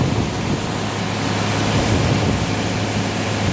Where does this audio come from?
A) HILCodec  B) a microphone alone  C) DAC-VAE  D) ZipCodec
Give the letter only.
B